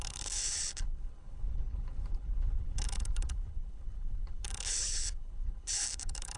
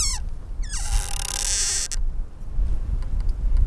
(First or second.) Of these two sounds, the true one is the second